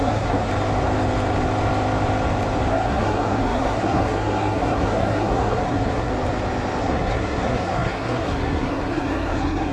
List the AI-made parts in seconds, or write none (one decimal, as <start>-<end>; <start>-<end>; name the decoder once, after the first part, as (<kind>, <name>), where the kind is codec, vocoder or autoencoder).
0.0-0.5 (codec, SNAC); 2.7-6.1; 6.8-9.7